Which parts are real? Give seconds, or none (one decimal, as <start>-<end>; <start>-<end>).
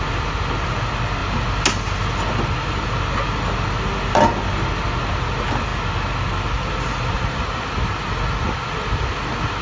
0.0-9.6